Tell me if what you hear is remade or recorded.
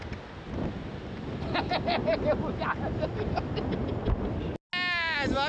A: recorded